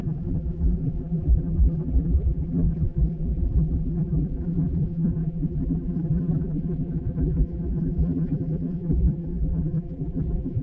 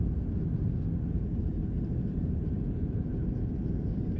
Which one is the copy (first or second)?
first